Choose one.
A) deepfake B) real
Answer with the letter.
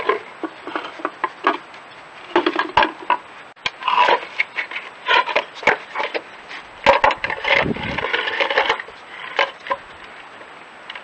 B